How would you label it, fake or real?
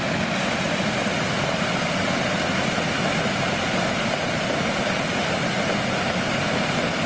real